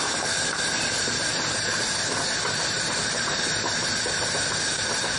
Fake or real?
fake